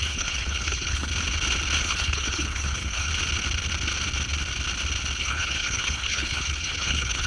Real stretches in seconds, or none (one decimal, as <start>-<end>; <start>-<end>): 1.1-1.8; 3.1-5.2